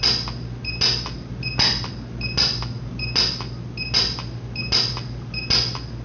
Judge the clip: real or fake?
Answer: real